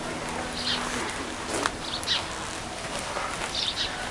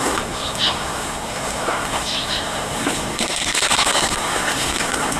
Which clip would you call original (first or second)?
first